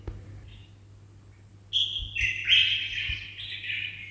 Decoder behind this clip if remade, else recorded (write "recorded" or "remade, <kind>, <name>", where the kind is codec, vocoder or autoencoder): recorded